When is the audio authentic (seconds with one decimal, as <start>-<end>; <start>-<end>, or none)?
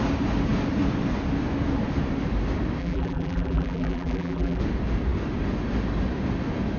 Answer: 0.0-2.8; 4.6-6.8